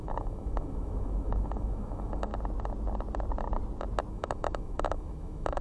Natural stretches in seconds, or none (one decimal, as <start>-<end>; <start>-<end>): 2.3-4.1